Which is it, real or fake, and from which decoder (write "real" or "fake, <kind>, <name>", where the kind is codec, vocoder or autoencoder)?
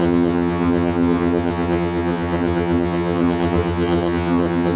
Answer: fake, vocoder, HiFi-GAN